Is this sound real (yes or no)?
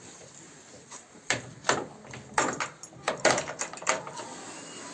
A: yes